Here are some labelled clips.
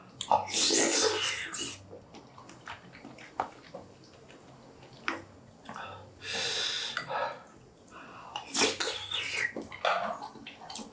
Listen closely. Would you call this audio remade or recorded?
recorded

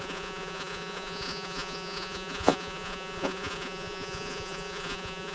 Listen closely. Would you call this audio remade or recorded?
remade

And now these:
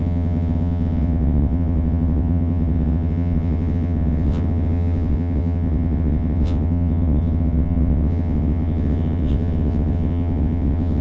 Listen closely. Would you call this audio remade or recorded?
remade